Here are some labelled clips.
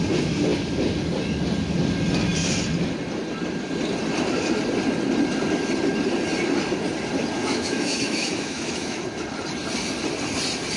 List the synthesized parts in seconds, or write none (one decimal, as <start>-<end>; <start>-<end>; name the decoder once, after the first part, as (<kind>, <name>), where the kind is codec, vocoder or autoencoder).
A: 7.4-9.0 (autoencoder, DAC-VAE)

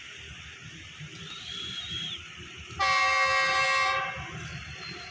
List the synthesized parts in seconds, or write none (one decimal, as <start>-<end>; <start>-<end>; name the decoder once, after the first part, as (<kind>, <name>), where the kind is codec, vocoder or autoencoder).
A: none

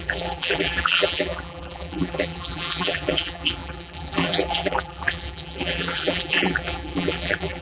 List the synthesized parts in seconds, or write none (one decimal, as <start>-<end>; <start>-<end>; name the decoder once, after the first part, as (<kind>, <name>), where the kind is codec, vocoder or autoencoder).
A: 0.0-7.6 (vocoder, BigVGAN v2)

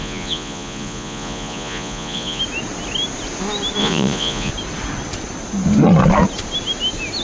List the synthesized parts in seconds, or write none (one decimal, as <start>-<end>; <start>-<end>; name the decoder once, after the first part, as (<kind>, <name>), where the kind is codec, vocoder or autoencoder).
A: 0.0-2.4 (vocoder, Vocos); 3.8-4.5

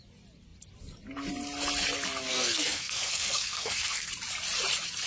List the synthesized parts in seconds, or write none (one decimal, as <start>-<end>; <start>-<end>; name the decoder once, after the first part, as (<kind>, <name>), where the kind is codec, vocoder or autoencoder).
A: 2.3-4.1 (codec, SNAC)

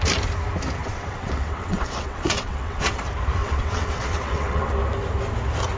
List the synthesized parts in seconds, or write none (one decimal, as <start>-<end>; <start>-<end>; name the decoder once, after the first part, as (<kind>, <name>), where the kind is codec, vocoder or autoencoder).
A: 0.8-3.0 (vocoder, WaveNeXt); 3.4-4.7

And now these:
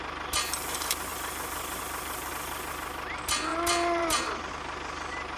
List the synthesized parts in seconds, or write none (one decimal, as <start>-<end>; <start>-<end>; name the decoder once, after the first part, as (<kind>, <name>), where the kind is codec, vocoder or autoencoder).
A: 3.5-4.4 (vocoder, BigVGAN v2)

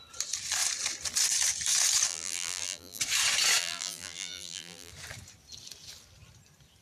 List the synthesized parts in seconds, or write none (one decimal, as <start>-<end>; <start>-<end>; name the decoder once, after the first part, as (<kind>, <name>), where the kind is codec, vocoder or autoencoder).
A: 2.1-3.0 (vocoder, BigVGAN v2); 3.6-4.9